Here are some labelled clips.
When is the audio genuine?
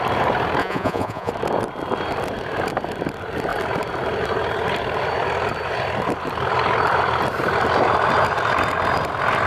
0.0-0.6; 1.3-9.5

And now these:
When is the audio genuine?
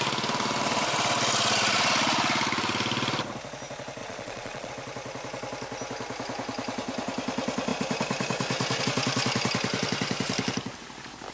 0.0-4.0; 4.7-11.3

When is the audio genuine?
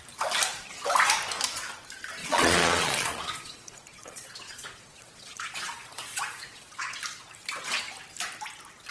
0.0-2.2; 7.0-8.9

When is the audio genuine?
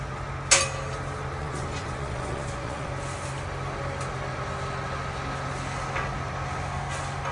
0.0-1.4; 2.9-7.3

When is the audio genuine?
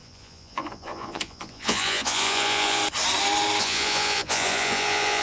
2.8-3.6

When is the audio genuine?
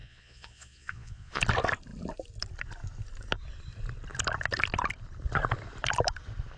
1.4-6.6